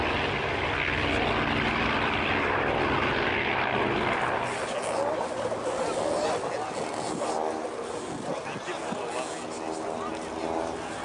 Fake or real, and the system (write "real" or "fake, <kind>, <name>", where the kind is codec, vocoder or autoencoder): real